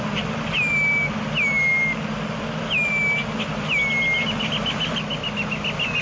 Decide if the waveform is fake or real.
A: real